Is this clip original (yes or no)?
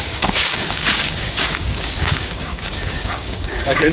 no